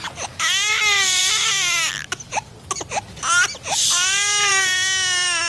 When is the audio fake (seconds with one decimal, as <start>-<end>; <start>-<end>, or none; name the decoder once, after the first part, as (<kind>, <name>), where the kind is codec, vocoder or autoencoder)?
none